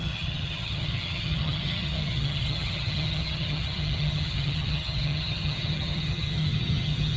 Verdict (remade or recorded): remade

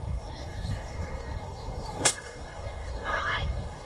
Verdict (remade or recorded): remade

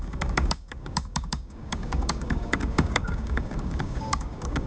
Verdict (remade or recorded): remade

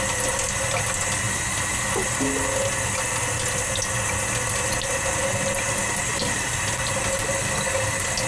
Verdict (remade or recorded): recorded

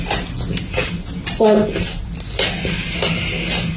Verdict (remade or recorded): recorded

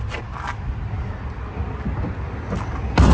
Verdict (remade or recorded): recorded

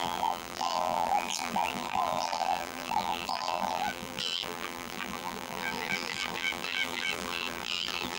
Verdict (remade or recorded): remade